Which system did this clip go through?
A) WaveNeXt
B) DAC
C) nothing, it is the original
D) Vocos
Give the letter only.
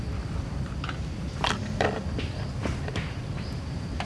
C